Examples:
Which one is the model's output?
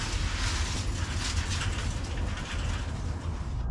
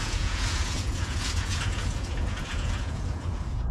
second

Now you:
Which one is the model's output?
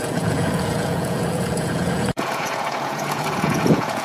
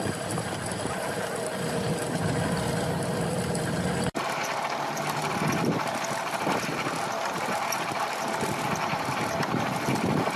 first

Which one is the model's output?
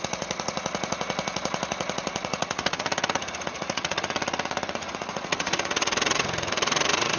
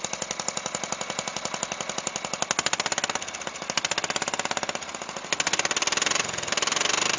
first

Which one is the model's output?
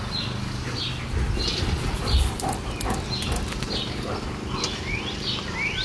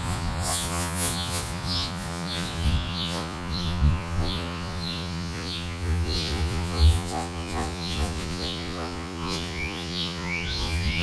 second